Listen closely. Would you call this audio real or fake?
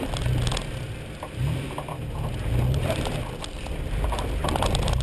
real